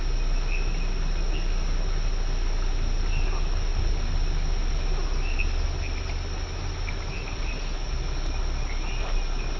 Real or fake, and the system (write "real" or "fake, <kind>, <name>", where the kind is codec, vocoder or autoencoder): real